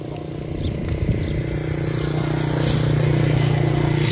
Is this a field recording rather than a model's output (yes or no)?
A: yes